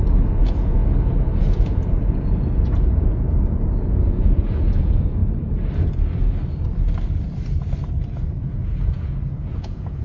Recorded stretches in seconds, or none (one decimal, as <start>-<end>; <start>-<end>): 0.8-1.4; 5.2-8.3